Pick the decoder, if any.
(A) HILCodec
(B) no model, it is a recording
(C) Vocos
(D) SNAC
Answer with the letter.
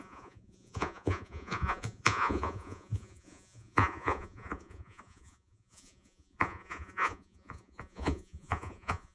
C